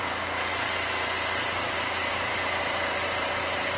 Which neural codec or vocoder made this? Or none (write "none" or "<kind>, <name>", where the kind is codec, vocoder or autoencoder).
none